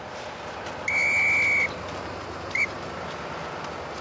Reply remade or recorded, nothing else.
recorded